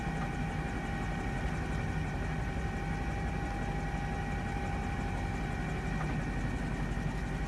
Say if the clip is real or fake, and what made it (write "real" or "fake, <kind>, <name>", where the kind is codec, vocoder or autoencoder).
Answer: real